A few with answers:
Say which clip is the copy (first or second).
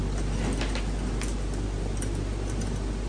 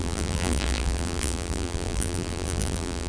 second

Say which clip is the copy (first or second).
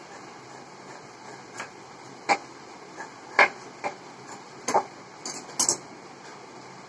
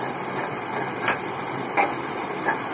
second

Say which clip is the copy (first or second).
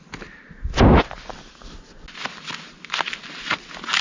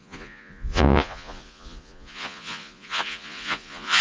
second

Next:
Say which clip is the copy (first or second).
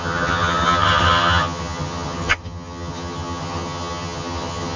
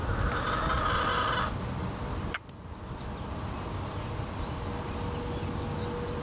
first